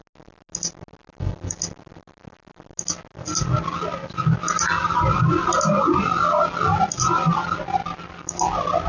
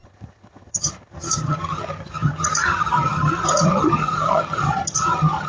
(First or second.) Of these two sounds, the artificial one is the second